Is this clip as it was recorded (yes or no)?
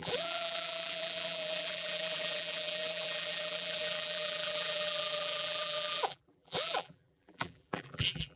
no